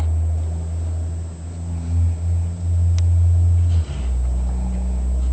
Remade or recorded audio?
recorded